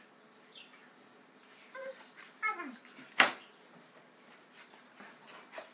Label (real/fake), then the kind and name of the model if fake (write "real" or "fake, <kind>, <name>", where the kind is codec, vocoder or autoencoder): real